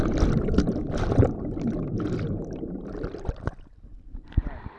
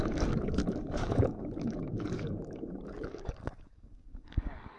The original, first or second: first